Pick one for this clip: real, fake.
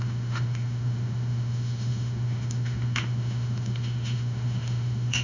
fake